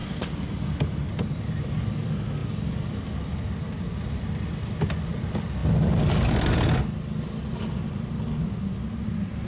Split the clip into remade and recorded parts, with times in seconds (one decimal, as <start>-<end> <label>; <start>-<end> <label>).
0.0-9.5 recorded